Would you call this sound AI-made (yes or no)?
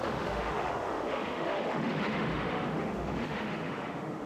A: yes